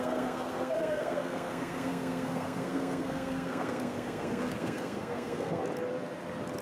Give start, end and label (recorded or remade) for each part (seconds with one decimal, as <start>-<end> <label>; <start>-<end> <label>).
0.0-5.6 remade; 5.6-6.6 recorded